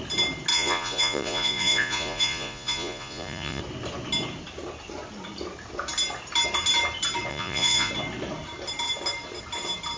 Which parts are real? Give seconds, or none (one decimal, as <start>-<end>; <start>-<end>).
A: 0.0-0.5; 3.6-7.3; 7.9-10.0

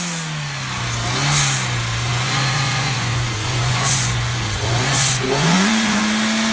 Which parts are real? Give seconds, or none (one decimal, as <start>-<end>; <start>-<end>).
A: 0.0-2.1; 6.0-6.5

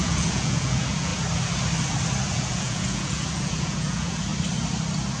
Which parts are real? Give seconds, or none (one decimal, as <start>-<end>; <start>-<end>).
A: 1.1-2.3; 4.3-5.2

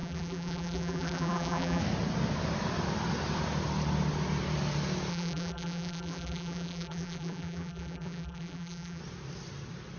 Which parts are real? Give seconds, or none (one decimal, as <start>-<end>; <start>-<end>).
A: 1.8-5.1; 9.0-10.0